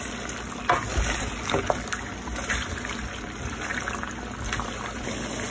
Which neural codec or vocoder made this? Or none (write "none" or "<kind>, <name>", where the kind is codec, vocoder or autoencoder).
none